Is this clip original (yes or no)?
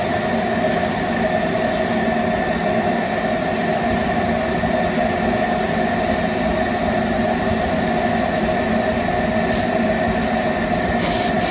yes